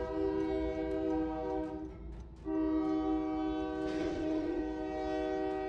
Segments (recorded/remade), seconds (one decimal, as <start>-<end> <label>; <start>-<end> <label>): 0.0-4.0 recorded; 4.0-4.6 remade; 4.6-5.7 recorded